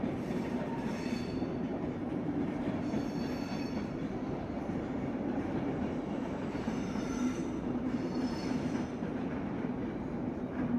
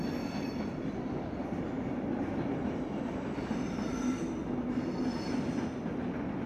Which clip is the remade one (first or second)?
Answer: first